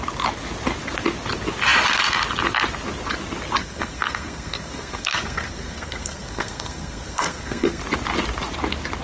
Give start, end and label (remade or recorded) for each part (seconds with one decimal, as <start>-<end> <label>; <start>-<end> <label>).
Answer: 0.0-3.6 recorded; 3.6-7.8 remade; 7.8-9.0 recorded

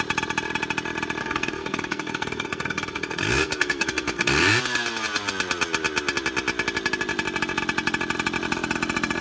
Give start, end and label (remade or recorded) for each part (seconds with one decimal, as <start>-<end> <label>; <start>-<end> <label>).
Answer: 0.0-1.2 recorded; 1.2-4.6 remade; 4.6-9.2 recorded

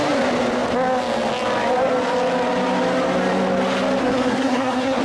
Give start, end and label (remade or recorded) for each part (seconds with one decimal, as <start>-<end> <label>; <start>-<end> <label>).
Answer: 0.0-4.0 recorded; 4.0-5.0 remade